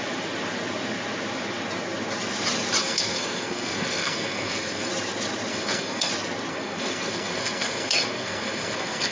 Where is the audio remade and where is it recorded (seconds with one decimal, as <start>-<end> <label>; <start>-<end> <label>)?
0.0-2.8 recorded; 2.8-4.9 remade; 4.9-5.5 recorded; 5.5-6.1 remade; 6.1-6.5 recorded; 6.5-9.1 remade